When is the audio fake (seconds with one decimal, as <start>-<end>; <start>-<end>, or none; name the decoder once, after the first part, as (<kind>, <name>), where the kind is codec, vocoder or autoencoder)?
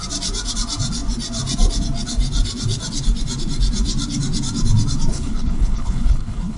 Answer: 5.1-6.6 (codec, HILCodec)